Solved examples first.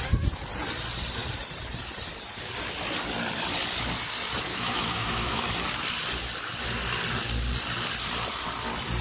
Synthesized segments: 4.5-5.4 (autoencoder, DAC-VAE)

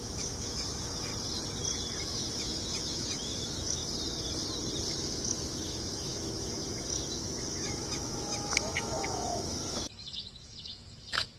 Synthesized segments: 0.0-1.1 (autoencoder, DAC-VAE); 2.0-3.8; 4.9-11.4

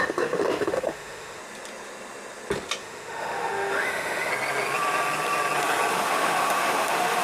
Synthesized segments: 0.0-1.4 (autoencoder, DAC-VAE); 2.8-4.3; 5.9-7.2

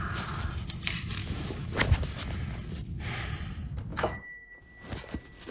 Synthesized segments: 1.2-1.9 (autoencoder, DAC-VAE); 3.9-4.5

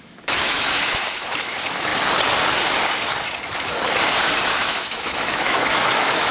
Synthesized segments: 0.0-1.9 (autoencoder, DAC-VAE); 4.5-6.3

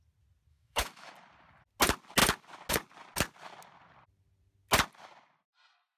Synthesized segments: 0.5-1.1 (autoencoder, DAC-VAE)

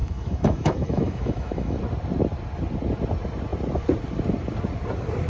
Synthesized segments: 0.0-1.8 (autoencoder, DAC-VAE)

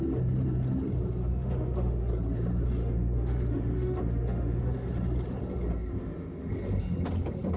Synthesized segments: 1.2-2.1 (autoencoder, DAC-VAE); 2.8-4.9; 5.9-6.5